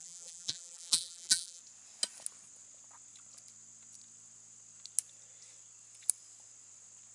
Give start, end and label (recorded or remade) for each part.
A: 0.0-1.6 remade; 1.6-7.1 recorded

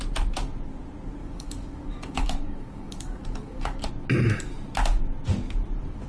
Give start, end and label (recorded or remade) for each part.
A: 0.0-1.2 recorded; 1.2-3.9 remade; 3.9-6.1 recorded

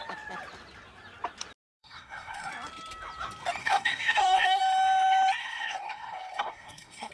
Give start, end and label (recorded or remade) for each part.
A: 0.0-1.7 recorded; 1.7-2.5 remade; 2.5-3.6 recorded; 3.6-4.6 remade; 4.6-5.4 recorded; 5.4-7.1 remade

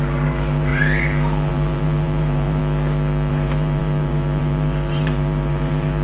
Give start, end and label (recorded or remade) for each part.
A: 0.0-2.6 remade; 2.6-3.3 recorded; 3.3-6.0 remade

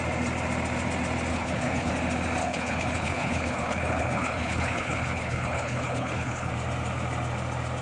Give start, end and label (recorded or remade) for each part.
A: 0.0-1.3 recorded; 1.3-1.9 remade; 1.9-2.4 recorded; 2.4-6.5 remade; 6.5-7.8 recorded